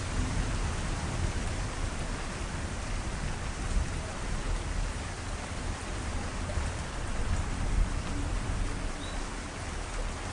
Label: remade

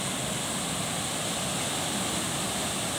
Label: recorded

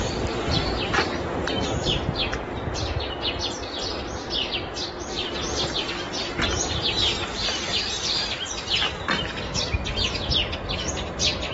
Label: recorded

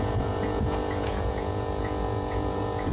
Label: remade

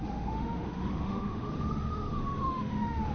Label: remade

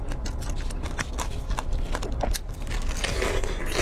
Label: recorded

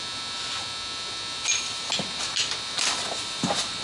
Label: recorded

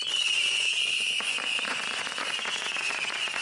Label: remade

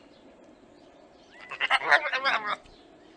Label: remade